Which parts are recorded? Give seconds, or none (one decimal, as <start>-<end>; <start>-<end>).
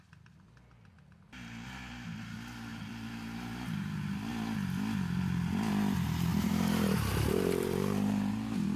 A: 0.0-2.7; 3.8-6.3